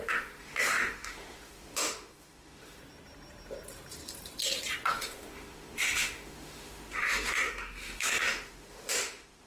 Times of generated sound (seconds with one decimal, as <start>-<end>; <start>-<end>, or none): 0.0-2.8; 4.9-9.5